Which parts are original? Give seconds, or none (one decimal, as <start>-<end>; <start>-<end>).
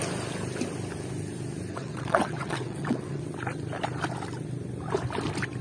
0.0-1.7; 3.2-5.6